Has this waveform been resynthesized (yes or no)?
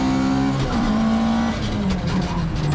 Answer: no